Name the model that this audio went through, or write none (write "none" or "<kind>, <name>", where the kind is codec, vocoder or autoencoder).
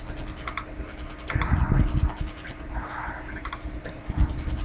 none